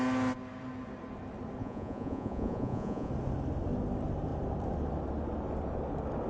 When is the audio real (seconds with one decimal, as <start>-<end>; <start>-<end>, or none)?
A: 0.0-1.6; 3.1-6.3